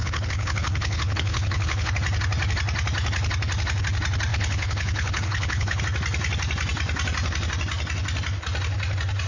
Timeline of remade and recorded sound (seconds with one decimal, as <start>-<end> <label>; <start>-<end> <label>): 0.0-1.9 remade; 1.9-4.3 recorded; 4.3-5.8 remade; 5.8-9.3 recorded